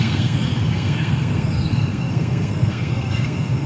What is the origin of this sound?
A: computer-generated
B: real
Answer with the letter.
A